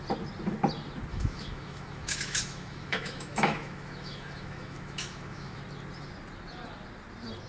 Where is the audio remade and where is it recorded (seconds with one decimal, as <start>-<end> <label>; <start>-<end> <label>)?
0.0-1.1 recorded; 1.1-5.6 remade; 5.6-7.5 recorded